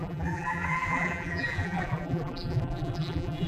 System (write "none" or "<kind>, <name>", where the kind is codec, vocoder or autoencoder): vocoder, BigVGAN v2